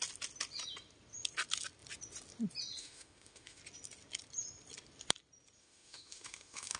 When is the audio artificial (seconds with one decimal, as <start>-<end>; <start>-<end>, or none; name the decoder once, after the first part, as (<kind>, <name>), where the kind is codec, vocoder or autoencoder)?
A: 2.8-3.6 (autoencoder, DAC-VAE); 5.6-6.8